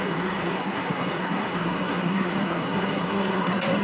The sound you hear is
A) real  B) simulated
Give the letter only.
B